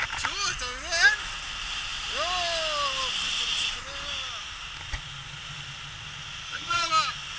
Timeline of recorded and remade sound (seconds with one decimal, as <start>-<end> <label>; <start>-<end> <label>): 0.0-6.4 recorded; 6.4-6.9 remade; 6.9-7.4 recorded